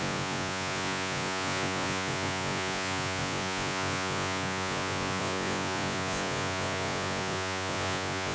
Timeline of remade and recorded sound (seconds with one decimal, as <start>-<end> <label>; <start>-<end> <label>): 0.0-8.3 remade